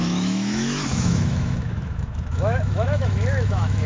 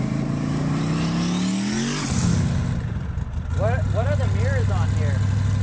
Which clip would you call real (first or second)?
second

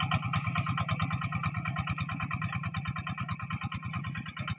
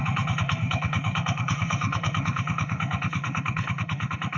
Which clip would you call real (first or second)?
first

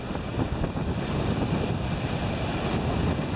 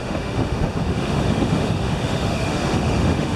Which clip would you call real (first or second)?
first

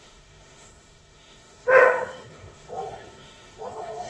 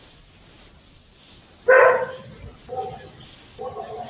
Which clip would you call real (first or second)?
second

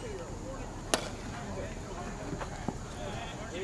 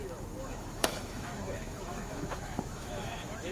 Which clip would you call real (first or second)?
first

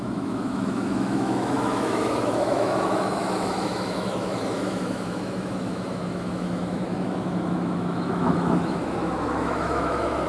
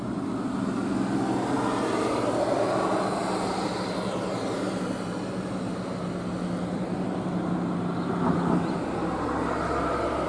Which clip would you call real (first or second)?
second